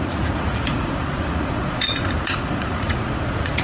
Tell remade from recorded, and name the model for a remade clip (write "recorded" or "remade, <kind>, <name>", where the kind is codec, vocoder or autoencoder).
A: remade, vocoder, Vocos